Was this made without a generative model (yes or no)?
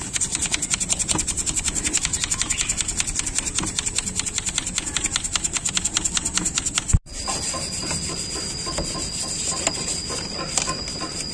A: yes